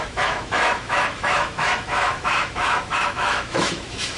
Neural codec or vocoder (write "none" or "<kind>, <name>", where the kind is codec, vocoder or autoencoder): autoencoder, DAC-VAE